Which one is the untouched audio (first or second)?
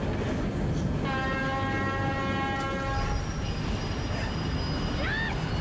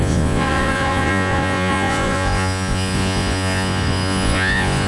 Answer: first